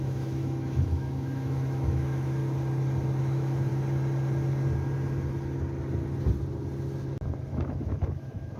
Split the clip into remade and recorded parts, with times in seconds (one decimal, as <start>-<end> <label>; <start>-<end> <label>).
0.0-2.4 remade; 2.4-3.2 recorded; 3.2-3.7 remade; 3.7-7.5 recorded; 7.5-8.6 remade